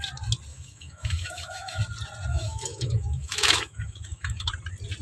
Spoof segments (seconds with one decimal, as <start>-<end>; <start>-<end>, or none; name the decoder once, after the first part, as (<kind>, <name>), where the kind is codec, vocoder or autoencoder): 0.5-1.8 (autoencoder, DAC-VAE); 2.3-4.5